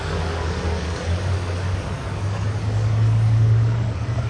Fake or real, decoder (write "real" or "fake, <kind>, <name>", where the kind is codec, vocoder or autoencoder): fake, codec, DAC